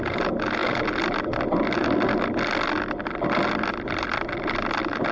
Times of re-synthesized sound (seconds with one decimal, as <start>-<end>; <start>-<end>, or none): none